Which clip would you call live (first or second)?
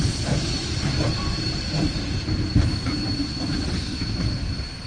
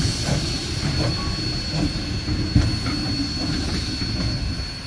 second